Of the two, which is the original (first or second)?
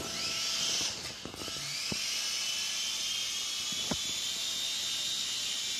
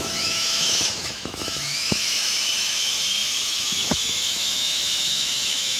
first